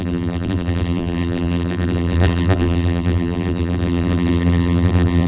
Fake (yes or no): yes